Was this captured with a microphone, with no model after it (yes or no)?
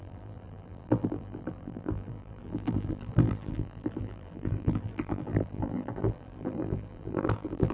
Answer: no